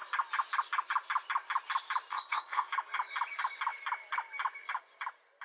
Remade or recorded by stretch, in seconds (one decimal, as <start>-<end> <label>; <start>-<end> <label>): 0.0-2.1 recorded; 2.1-2.7 remade; 2.7-5.4 recorded

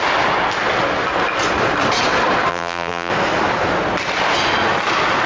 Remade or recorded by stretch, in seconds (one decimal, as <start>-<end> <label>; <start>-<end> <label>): 0.0-2.5 recorded; 2.5-3.1 remade; 3.1-5.3 recorded

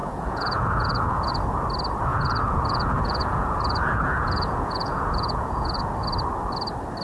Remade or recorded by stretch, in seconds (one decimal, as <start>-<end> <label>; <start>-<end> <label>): 0.0-1.3 remade; 1.3-2.1 recorded; 2.1-5.8 remade; 5.8-7.0 recorded

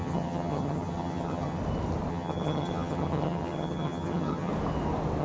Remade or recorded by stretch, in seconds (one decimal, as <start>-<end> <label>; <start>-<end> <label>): 0.0-1.6 remade; 1.6-2.1 recorded; 2.1-4.5 remade; 4.5-5.2 recorded

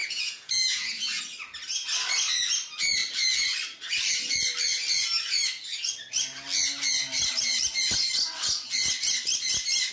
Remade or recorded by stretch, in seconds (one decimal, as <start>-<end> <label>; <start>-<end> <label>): 0.0-1.2 remade; 1.2-9.9 recorded

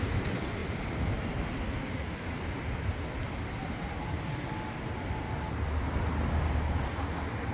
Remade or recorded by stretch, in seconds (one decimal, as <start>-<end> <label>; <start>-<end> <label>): 0.0-7.5 recorded